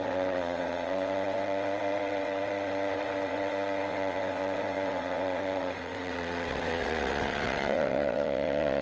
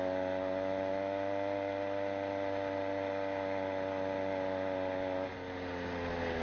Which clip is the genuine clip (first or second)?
second